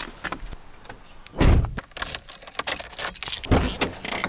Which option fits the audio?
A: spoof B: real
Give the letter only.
B